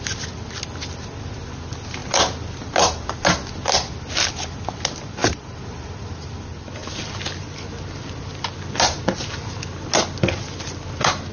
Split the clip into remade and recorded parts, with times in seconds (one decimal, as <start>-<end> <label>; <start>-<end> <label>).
0.0-5.2 recorded; 5.2-6.3 remade; 6.3-11.3 recorded